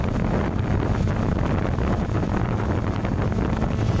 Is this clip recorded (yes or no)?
yes